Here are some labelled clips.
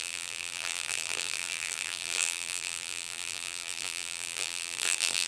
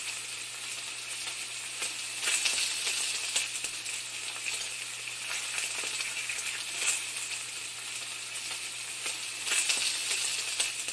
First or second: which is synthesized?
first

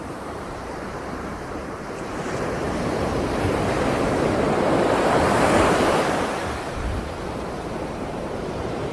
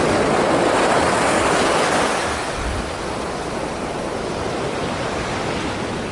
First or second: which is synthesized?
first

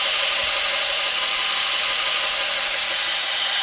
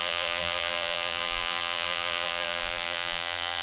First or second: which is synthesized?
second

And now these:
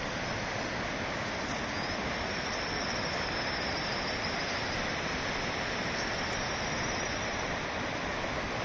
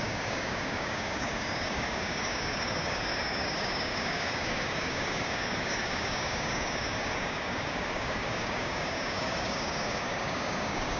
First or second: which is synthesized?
second